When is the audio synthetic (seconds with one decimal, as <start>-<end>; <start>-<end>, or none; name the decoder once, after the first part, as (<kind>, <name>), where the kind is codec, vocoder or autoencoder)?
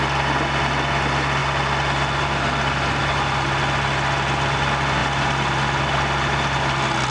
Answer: none